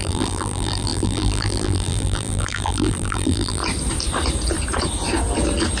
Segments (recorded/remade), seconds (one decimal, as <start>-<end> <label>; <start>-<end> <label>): 0.0-3.6 remade; 3.6-5.8 recorded